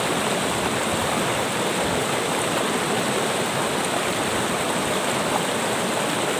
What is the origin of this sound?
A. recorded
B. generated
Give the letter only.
A